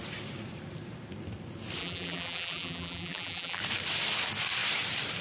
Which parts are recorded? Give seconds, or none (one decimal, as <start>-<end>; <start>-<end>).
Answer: 0.0-1.8; 3.6-5.2